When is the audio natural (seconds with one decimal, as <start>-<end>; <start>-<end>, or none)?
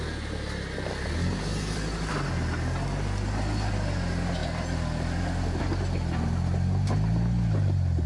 0.0-1.5; 2.1-4.4; 5.6-8.1